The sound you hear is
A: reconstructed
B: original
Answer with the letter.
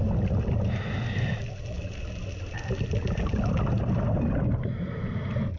B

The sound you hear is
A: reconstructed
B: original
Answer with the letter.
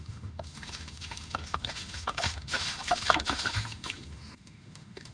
A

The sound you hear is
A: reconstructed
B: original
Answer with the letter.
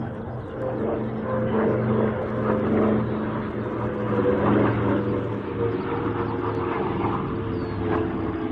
B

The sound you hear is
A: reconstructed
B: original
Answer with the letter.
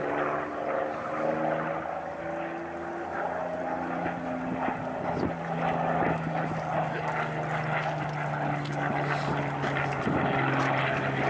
B